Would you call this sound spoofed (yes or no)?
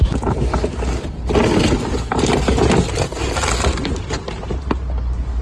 no